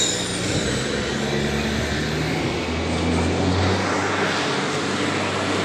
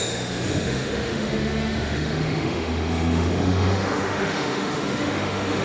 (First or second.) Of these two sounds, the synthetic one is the second